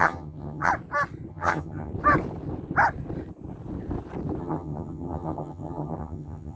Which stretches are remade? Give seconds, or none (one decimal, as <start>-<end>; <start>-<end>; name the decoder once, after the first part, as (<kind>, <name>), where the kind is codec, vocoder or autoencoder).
0.0-0.7 (vocoder, HiFi-GAN); 1.3-1.9; 4.4-6.6